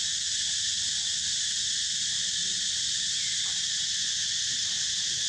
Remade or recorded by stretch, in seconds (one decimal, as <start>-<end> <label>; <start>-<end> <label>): 0.0-5.3 recorded